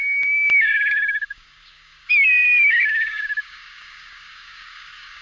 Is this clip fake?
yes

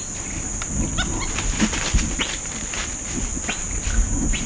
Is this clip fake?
no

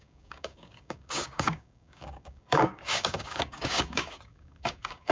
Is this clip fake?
yes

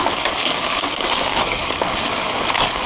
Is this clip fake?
yes